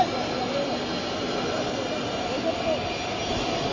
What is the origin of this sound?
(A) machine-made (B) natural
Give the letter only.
B